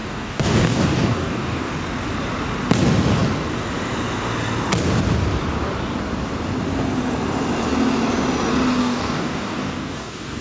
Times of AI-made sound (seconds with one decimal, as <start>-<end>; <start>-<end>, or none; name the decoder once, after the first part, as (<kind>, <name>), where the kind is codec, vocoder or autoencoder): 0.0-1.7 (codec, DAC); 8.8-10.4